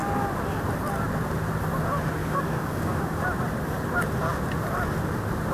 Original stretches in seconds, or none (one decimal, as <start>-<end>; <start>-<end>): 0.0-2.2; 3.2-5.5